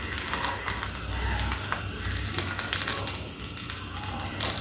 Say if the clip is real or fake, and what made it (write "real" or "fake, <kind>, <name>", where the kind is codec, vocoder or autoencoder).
real